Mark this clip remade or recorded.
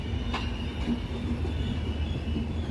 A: recorded